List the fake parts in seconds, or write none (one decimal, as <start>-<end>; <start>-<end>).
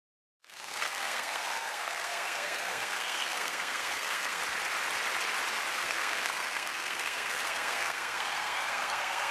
0.0-4.4; 5.7-9.3